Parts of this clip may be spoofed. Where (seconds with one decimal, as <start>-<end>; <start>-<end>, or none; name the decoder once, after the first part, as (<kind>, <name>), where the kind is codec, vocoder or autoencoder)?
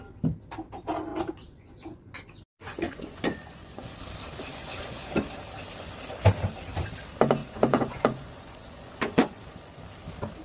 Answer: 1.1-3.9 (vocoder, Vocos); 4.5-5.1; 7.4-9.8